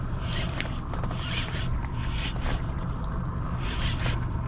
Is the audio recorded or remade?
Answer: recorded